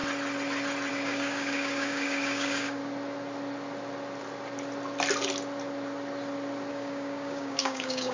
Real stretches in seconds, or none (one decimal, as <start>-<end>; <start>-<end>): 0.0-0.9; 2.8-6.7